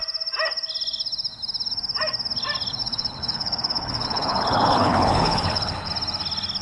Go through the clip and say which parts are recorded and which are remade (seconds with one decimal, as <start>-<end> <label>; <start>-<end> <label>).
0.0-2.8 recorded; 2.8-5.9 remade; 5.9-6.6 recorded